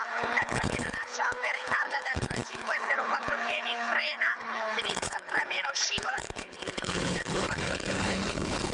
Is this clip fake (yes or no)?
yes